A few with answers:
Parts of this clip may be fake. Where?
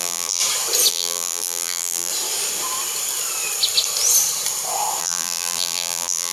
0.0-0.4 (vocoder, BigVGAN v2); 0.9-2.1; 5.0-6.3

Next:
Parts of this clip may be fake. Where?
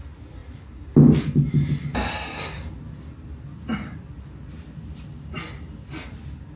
none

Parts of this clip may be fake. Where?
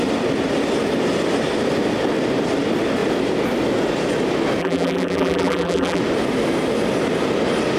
4.6-6.0 (vocoder, BigVGAN v2)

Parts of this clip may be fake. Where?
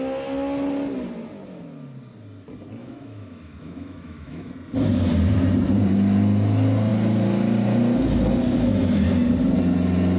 2.8-4.5 (autoencoder, DAC-VAE)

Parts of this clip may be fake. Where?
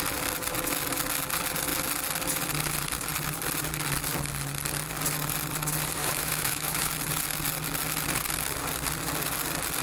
6.0-6.9 (autoencoder, DAC-VAE)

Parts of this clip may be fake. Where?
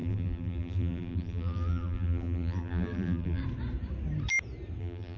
0.0-3.4 (vocoder, BigVGAN v2); 4.8-5.2